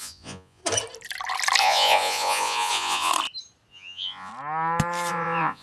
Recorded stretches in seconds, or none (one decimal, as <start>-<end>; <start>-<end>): 0.6-1.6; 3.1-3.7; 4.3-5.1